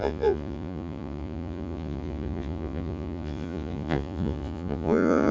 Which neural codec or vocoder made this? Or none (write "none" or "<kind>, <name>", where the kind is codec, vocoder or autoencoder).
vocoder, Vocos